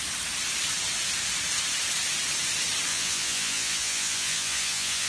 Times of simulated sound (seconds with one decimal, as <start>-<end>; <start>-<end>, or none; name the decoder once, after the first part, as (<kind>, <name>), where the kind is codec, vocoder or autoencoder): 2.9-5.1 (vocoder, Vocos)